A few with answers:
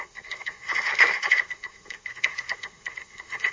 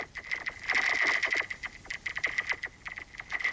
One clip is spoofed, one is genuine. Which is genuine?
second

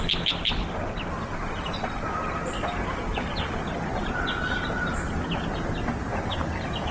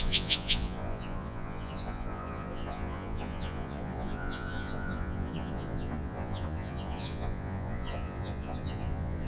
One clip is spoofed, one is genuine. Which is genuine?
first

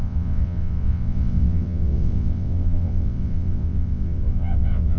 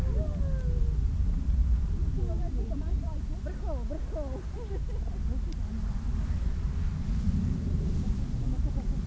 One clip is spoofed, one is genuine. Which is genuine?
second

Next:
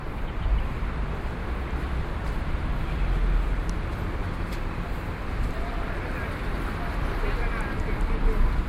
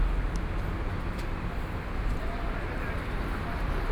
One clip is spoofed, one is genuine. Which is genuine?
second